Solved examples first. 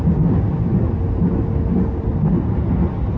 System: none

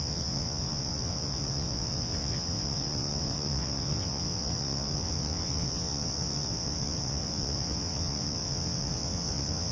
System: vocoder, WaveNeXt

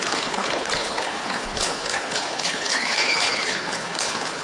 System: codec, HILCodec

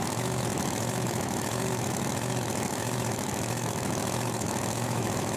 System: autoencoder, DAC-VAE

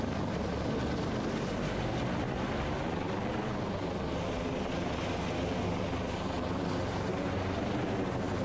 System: none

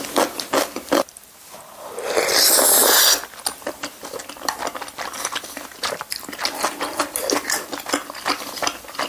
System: none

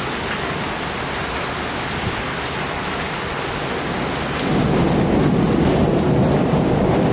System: none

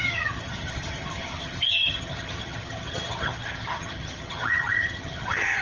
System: vocoder, HiFi-GAN